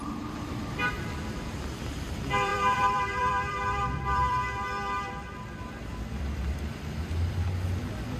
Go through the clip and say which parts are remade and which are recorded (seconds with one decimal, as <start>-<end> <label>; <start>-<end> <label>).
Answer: 0.0-8.2 remade